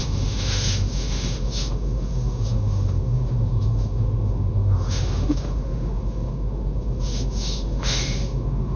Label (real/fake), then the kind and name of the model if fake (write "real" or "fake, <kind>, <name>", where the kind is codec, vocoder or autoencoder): fake, autoencoder, DAC-VAE